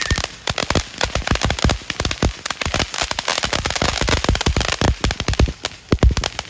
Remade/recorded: recorded